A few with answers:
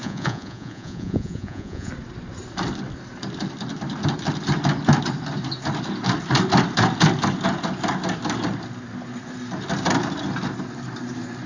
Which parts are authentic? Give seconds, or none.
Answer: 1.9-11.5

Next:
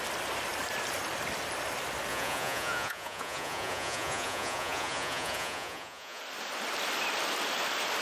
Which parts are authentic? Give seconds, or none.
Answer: 0.0-2.1; 6.2-8.0

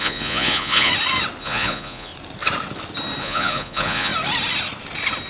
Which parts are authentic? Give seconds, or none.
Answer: 0.9-1.4; 2.1-3.2; 4.1-5.3

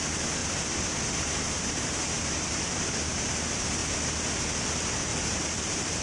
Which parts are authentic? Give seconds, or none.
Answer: 0.0-0.4; 2.8-5.1